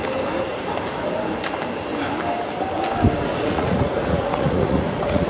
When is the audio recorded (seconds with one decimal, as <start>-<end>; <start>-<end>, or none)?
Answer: 0.0-3.3